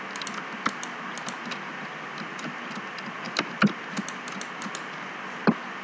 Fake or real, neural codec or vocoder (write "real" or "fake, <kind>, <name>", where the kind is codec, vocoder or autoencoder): real